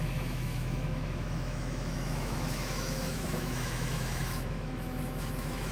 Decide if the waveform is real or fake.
fake